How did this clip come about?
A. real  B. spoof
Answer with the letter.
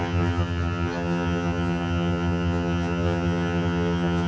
B